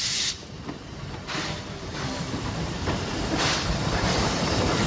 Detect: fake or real fake